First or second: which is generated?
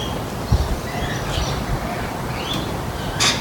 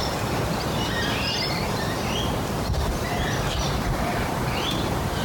second